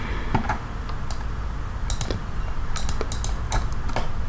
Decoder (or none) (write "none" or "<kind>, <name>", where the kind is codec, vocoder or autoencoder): none